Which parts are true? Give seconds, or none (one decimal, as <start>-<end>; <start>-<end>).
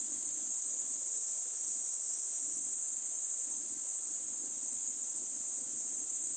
1.2-2.5